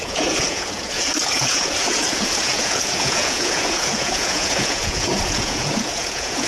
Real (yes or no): no